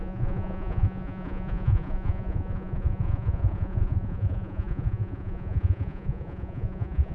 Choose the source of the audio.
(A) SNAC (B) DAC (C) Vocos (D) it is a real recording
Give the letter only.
C